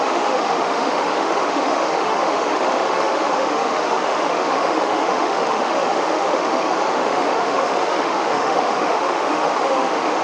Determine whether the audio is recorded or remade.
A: remade